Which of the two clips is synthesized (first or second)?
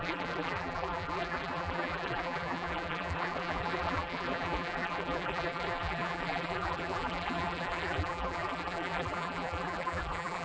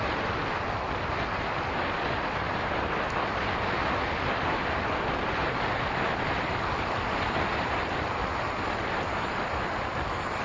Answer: first